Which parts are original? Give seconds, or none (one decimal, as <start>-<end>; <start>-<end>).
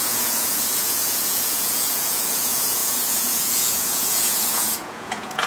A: none